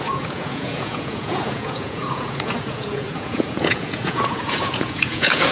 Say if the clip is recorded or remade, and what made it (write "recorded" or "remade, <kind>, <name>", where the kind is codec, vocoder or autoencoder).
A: remade, vocoder, Vocos